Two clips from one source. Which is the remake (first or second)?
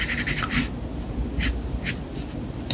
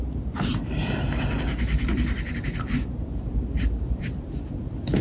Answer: second